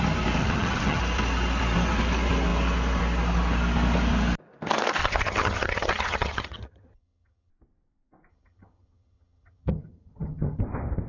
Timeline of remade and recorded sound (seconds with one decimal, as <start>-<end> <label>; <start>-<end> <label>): 0.0-0.4 recorded; 0.4-1.0 remade; 1.0-5.0 recorded; 5.0-7.5 remade; 7.5-8.3 recorded; 8.3-10.6 remade; 10.6-11.1 recorded